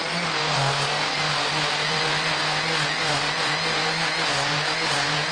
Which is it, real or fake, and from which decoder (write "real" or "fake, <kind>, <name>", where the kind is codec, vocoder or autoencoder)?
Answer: real